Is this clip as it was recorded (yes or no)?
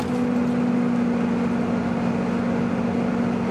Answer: yes